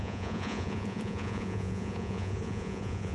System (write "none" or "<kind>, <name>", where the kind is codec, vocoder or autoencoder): vocoder, Vocos